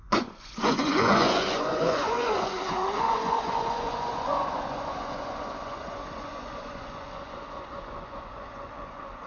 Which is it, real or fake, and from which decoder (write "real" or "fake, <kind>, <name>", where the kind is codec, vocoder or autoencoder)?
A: fake, vocoder, Vocos